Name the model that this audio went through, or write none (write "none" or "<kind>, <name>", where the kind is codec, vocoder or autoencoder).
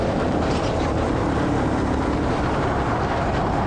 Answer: vocoder, BigVGAN v2